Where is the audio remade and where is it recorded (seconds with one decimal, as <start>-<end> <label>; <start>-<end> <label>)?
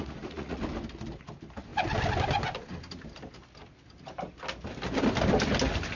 0.0-0.6 remade; 0.6-6.0 recorded